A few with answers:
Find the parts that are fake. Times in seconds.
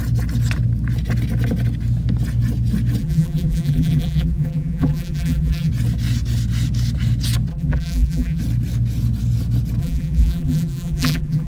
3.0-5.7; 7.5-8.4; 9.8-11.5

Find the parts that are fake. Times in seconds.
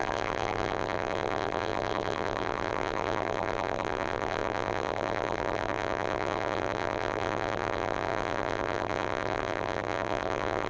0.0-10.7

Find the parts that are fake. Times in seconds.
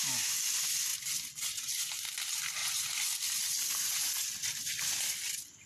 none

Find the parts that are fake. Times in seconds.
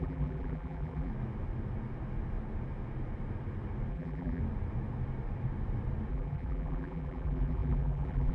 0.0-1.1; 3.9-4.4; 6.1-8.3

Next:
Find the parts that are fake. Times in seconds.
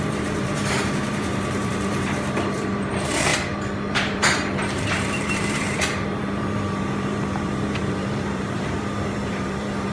0.0-3.3; 3.9-9.9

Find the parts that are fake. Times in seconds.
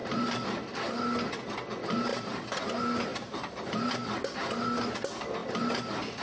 0.0-0.9; 2.1-2.6; 3.1-3.9; 5.4-6.2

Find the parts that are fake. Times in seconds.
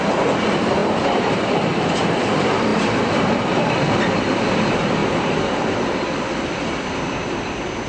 0.8-1.6; 2.7-3.7; 5.0-7.5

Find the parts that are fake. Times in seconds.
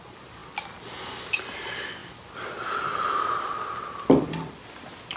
none